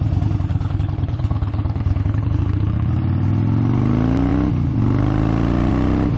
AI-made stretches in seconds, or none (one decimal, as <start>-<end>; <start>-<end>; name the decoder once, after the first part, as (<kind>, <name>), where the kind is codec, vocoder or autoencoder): 0.5-2.9 (codec, HILCodec)